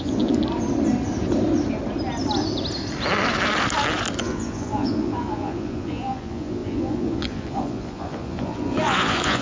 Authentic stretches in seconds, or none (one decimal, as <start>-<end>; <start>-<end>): 0.4-4.2